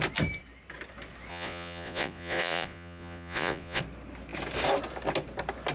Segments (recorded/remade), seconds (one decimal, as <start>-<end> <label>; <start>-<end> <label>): 0.0-1.3 recorded; 1.3-3.8 remade; 3.8-5.7 recorded